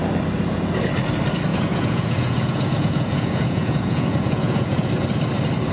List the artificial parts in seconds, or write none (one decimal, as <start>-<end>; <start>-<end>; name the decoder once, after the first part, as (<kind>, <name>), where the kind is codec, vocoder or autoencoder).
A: 1.5-4.9 (vocoder, Vocos)